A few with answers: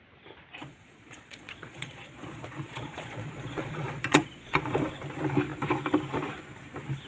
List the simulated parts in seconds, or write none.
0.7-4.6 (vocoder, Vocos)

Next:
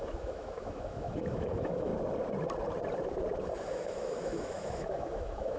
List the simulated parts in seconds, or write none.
0.0-1.9 (autoencoder, DAC-VAE); 3.7-5.6

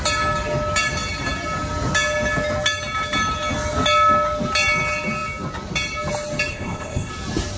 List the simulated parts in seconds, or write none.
6.5-7.1 (codec, ZipCodec)

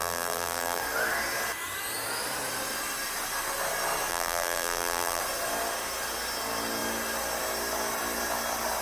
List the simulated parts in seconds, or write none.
0.0-0.8 (vocoder, BigVGAN v2); 4.1-5.2

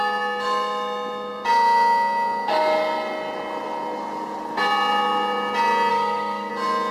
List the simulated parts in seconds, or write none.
5.9-6.5 (codec, SNAC)

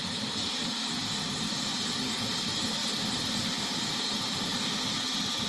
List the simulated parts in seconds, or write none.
0.0-5.5 (vocoder, BigVGAN v2)